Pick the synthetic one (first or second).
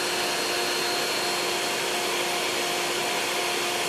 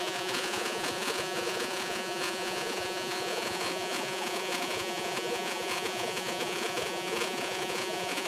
second